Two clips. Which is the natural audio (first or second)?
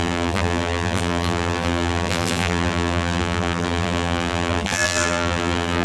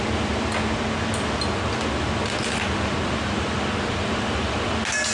second